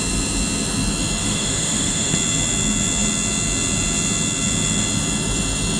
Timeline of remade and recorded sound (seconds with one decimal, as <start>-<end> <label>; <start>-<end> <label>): 0.0-1.2 recorded; 1.2-2.1 remade; 2.1-5.8 recorded